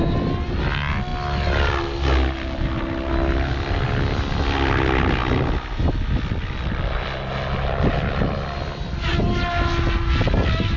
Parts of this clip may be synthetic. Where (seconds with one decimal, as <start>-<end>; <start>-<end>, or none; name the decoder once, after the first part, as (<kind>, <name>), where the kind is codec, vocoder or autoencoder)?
none